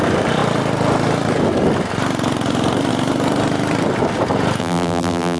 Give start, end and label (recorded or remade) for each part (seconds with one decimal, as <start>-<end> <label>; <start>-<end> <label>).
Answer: 0.0-4.6 recorded; 4.6-5.4 remade